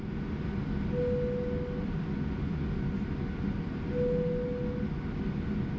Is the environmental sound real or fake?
real